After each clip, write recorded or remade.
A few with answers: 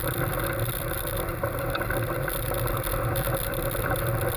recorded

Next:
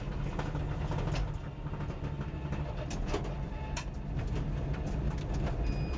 recorded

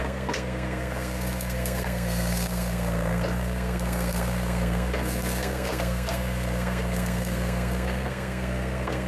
remade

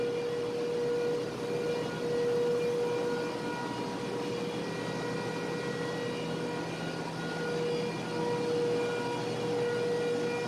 recorded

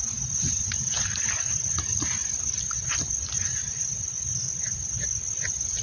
recorded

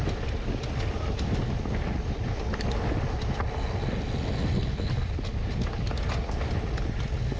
recorded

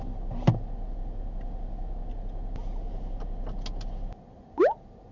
recorded